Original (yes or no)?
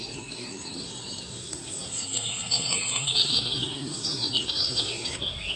no